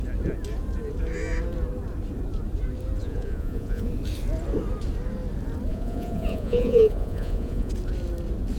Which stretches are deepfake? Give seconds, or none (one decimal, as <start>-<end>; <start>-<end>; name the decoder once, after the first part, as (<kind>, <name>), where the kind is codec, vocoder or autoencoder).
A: 3.0-3.9 (vocoder, Vocos); 5.7-7.7